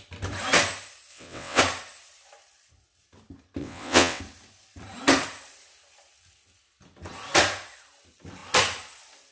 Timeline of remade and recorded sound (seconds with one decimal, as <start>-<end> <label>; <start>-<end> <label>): 0.0-1.1 recorded; 1.1-1.6 remade; 1.6-3.6 recorded; 3.6-4.2 remade; 4.2-9.3 recorded